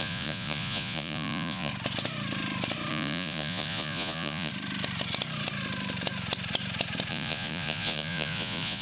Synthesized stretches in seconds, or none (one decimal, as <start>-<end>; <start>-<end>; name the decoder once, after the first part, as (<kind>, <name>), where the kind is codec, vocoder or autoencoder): 0.0-1.7 (vocoder, Vocos); 2.9-4.5; 7.1-8.8